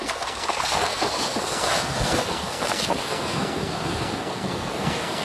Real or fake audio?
fake